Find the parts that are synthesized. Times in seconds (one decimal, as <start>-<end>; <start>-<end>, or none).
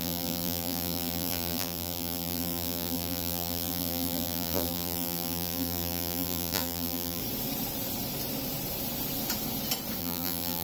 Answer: 0.0-7.2; 10.0-10.6